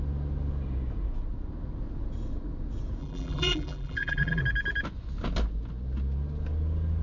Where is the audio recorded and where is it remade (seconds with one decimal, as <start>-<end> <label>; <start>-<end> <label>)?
0.0-3.0 recorded; 3.0-4.4 remade; 4.4-7.0 recorded